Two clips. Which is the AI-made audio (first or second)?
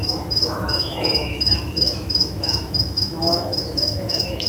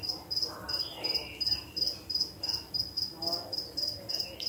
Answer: first